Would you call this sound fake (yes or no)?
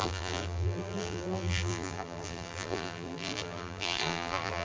yes